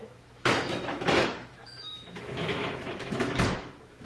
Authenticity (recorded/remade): remade